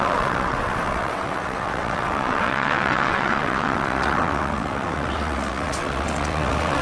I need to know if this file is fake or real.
fake